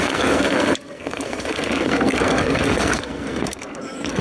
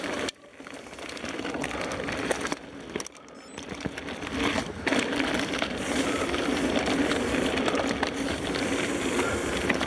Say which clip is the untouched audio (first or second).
second